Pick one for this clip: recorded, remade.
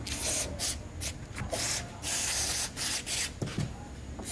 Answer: recorded